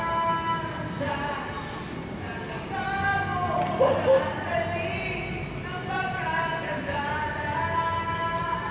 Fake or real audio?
real